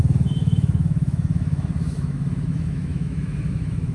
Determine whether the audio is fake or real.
fake